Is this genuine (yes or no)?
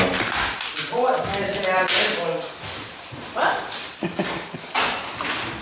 yes